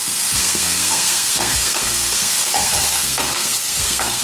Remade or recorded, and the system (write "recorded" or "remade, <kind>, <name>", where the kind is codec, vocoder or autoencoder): remade, codec, SNAC